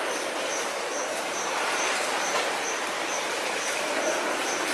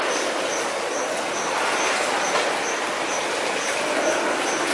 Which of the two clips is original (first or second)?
second